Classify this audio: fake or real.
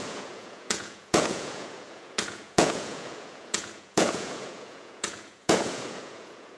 fake